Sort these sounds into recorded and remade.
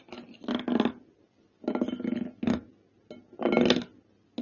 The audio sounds recorded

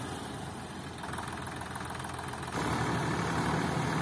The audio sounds recorded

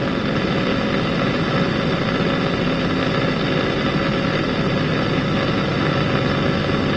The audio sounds recorded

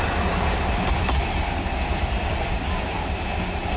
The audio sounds recorded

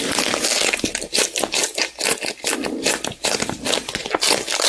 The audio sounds recorded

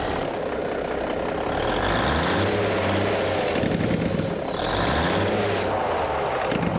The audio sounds recorded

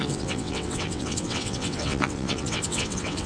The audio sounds remade